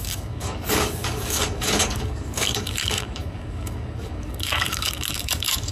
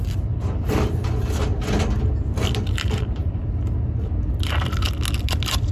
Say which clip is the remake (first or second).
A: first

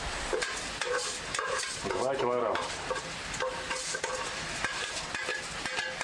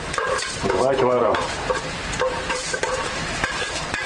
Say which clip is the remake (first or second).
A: second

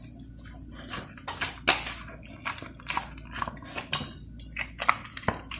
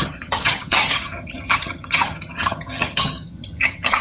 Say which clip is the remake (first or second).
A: second